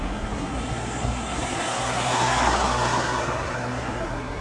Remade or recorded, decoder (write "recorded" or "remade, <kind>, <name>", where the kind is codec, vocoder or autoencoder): remade, codec, SNAC